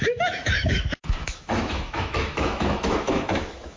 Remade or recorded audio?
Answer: remade